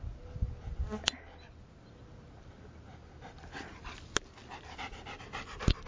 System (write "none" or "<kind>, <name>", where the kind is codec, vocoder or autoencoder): none